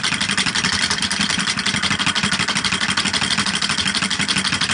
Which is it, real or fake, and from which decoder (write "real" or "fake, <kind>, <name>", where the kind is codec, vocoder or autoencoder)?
real